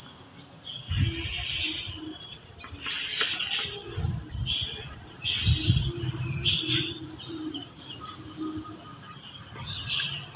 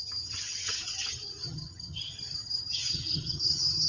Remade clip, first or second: second